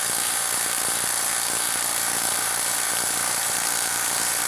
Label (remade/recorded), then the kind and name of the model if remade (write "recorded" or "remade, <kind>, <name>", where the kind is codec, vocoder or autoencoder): remade, vocoder, BigVGAN v2